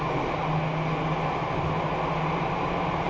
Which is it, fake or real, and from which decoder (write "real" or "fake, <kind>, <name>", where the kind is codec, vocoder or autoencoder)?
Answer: real